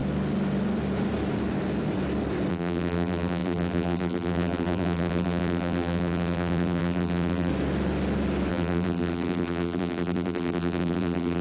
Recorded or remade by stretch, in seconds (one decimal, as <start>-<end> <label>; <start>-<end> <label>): 0.0-2.5 recorded; 2.5-7.5 remade; 7.5-8.5 recorded; 8.5-11.4 remade